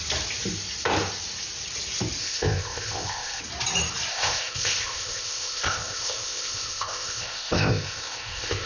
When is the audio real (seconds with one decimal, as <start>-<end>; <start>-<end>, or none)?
0.0-2.2; 3.4-4.1